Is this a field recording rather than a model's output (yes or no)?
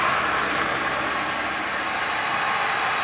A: yes